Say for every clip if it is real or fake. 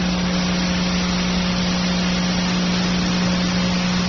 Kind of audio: real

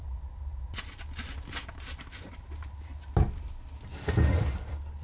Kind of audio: real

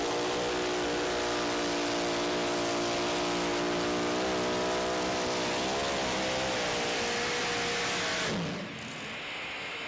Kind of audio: real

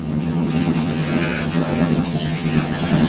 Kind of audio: fake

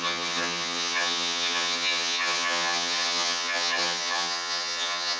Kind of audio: fake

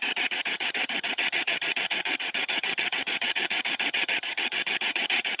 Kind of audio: fake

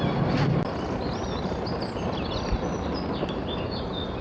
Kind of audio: real